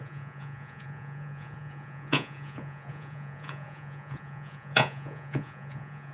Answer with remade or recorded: remade